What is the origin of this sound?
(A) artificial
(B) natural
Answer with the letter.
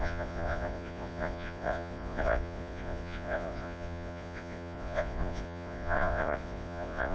A